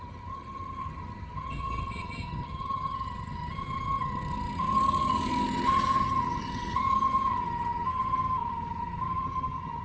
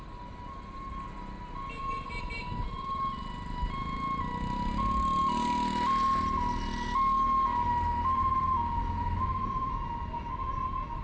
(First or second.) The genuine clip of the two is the second